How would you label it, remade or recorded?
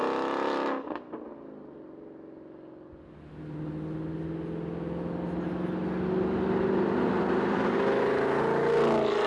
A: recorded